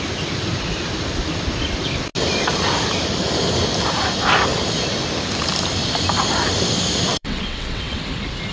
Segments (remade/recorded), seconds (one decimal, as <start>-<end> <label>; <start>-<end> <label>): 0.0-7.1 recorded; 7.1-8.0 remade; 8.0-8.5 recorded